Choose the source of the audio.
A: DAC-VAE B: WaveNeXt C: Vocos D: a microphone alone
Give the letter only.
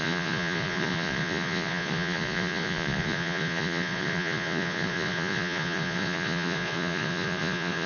C